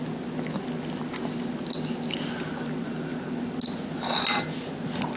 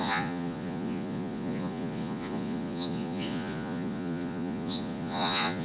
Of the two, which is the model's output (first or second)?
second